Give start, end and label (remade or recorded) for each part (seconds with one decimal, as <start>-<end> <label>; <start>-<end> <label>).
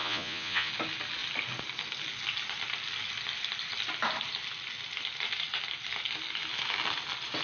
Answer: 0.0-0.7 remade; 0.7-7.4 recorded